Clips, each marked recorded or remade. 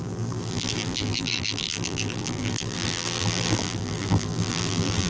remade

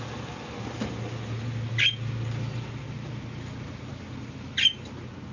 recorded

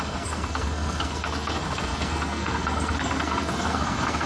remade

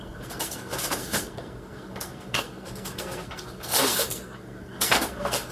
remade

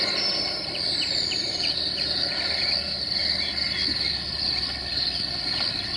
recorded